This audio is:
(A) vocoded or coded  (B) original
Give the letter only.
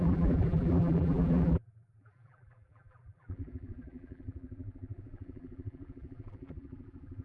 A